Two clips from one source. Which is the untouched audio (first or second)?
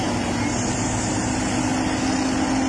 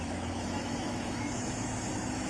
first